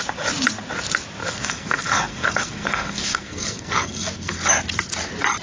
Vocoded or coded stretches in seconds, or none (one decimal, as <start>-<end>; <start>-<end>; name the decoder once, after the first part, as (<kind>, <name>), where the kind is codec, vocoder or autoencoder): 1.2-4.4 (codec, SNAC)

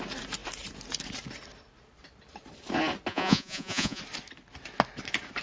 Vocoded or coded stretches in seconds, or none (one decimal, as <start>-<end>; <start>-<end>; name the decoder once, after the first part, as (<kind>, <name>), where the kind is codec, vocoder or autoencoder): 3.1-4.0 (vocoder, Vocos)